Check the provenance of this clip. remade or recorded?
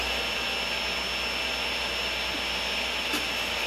recorded